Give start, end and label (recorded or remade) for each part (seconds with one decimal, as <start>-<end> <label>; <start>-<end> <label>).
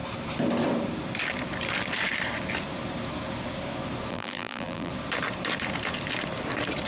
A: 0.0-4.1 recorded; 4.1-4.9 remade; 4.9-6.9 recorded